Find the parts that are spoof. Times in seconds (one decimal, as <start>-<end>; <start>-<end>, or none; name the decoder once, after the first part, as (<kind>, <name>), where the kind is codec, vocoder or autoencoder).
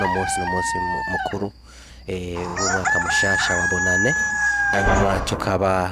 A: 1.4-1.9 (codec, SNAC); 4.3-5.5